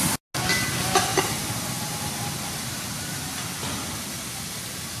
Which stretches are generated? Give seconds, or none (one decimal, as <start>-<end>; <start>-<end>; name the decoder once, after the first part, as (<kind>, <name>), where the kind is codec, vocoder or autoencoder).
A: none